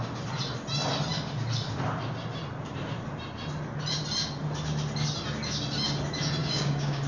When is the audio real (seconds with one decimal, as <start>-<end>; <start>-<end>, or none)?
0.0-6.4